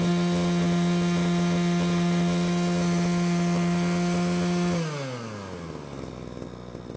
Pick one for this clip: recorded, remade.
recorded